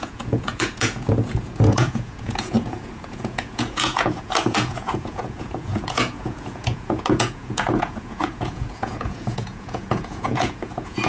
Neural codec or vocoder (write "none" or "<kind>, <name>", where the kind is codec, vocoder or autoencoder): vocoder, Vocos